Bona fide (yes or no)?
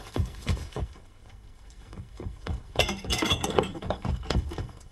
no